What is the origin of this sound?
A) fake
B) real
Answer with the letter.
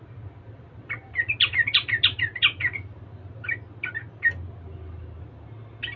B